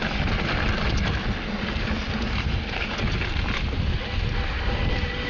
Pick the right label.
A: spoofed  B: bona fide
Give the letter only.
B